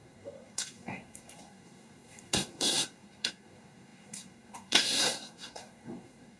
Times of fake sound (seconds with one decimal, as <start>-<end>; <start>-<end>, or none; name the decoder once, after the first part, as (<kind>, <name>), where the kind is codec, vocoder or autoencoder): 0.0-6.4 (codec, SNAC)

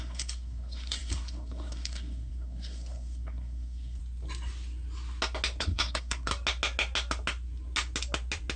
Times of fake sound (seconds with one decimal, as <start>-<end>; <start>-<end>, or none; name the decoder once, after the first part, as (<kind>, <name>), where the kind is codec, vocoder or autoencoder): 0.0-4.0 (codec, SNAC); 5.6-6.3

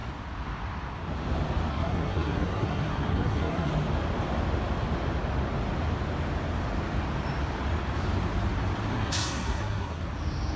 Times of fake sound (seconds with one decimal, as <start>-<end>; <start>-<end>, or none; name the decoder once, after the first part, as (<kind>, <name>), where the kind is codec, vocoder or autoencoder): 1.7-3.7 (codec, SNAC); 8.9-10.1

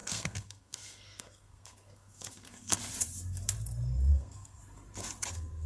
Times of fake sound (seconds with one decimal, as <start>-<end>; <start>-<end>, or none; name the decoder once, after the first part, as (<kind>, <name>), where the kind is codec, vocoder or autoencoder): 0.0-2.8 (codec, SNAC); 4.1-4.6; 5.3-5.7

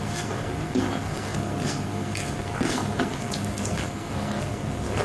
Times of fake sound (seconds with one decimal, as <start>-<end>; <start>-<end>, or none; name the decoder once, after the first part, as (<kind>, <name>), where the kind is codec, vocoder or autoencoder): 0.0-5.0 (codec, SNAC)

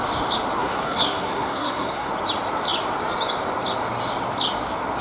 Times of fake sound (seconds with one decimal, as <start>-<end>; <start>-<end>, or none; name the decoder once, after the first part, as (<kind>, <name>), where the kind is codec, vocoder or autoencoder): 0.6-2.1 (codec, SNAC)

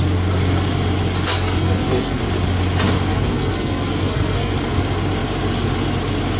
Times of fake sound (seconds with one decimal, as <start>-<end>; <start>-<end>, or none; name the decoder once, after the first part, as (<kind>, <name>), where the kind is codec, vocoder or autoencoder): 1.3-2.2 (codec, SNAC); 3.1-4.5

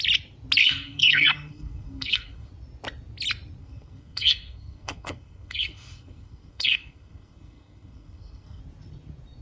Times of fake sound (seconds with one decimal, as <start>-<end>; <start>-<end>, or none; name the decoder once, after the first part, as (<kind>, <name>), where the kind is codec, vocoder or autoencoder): 0.6-2.5 (codec, SNAC); 3.6-8.6